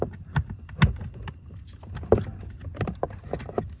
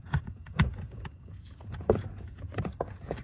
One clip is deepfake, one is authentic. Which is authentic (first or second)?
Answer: first